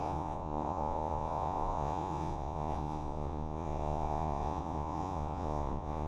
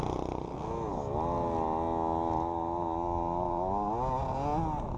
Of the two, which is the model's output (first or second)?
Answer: first